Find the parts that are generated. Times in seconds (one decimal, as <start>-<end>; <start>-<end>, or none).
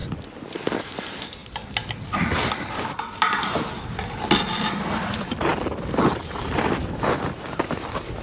0.8-8.2